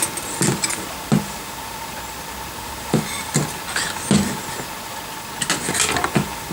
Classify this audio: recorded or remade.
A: recorded